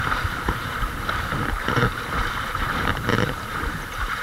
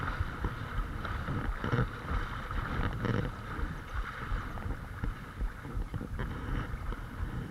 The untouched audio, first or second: second